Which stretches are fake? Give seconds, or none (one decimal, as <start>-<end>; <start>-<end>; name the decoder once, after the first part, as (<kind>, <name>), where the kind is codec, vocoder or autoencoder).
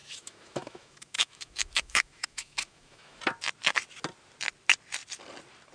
0.0-3.2 (autoencoder, DAC-VAE)